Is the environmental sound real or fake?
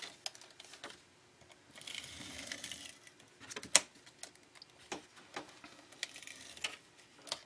real